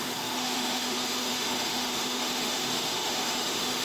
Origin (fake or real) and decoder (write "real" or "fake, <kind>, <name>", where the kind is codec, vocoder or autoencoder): fake, autoencoder, DAC-VAE